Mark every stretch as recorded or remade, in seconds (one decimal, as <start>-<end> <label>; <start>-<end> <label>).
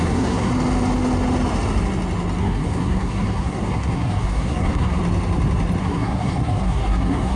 0.0-0.5 remade; 0.5-2.4 recorded; 2.4-5.0 remade; 5.0-5.8 recorded; 5.8-7.4 remade